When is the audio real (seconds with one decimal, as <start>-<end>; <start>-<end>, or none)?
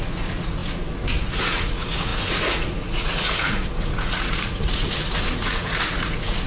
none